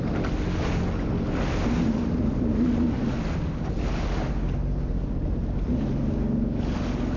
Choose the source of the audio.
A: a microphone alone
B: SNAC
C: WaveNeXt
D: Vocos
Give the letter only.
A